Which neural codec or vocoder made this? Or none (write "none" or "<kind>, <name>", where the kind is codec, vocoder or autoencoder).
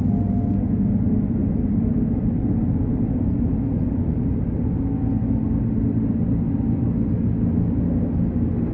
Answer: none